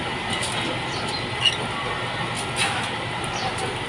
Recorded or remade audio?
recorded